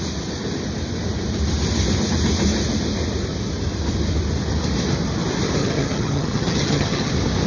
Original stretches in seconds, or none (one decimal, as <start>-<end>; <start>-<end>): 0.0-5.6; 7.1-7.5